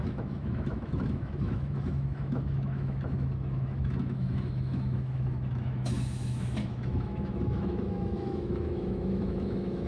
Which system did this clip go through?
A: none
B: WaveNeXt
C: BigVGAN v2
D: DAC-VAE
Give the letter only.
D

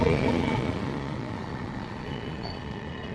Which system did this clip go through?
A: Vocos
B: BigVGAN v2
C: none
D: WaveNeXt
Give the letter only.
A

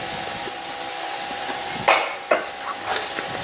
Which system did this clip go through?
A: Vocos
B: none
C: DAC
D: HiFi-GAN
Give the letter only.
B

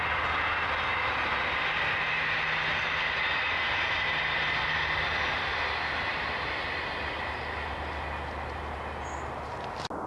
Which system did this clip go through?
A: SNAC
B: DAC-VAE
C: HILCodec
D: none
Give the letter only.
D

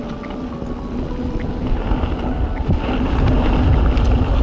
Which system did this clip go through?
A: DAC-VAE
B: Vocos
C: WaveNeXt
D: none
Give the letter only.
D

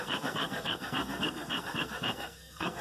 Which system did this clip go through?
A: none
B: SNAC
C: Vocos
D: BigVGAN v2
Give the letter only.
B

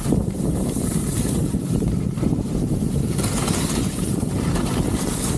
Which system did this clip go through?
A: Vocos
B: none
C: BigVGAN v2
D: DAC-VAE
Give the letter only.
C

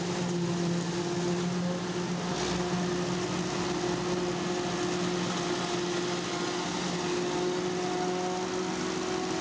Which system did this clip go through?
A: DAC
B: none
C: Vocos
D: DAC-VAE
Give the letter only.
B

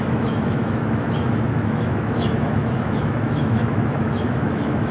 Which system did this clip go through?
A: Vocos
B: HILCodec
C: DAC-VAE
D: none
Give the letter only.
C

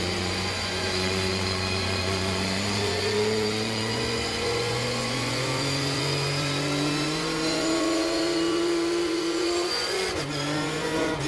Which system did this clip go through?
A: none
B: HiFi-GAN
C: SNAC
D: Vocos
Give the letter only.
D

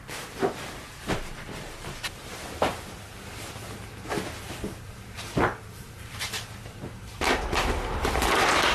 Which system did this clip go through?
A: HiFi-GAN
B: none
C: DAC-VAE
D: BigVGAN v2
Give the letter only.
D